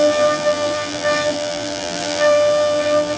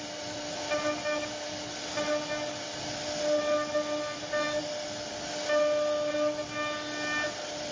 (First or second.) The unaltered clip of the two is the second